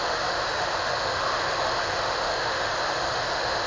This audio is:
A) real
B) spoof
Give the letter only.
B